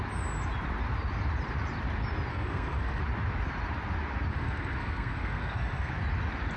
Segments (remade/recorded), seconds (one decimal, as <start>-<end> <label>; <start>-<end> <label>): 0.0-2.3 recorded; 2.3-3.0 remade; 3.0-4.3 recorded; 4.3-5.9 remade; 5.9-6.6 recorded